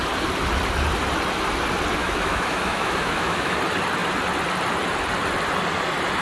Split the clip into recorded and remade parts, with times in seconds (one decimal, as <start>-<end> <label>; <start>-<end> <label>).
0.0-2.0 recorded; 2.0-3.6 remade; 3.6-6.2 recorded